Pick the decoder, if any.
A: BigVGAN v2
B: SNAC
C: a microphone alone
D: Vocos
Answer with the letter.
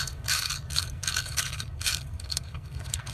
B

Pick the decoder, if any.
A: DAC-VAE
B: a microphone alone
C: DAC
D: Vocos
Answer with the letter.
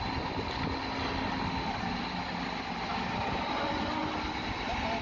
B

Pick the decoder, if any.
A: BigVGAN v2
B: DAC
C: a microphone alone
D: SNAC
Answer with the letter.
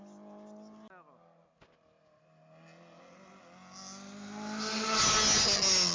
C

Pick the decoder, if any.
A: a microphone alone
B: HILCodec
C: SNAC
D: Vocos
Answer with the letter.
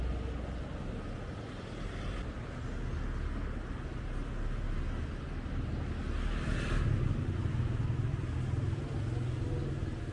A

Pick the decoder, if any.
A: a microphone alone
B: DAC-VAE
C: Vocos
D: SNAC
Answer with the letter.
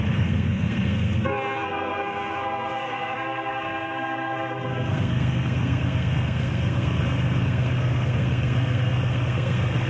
D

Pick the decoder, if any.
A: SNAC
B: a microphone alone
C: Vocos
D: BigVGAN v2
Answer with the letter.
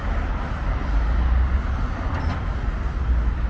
B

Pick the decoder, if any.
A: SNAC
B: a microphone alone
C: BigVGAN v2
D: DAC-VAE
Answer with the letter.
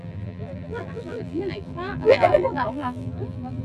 C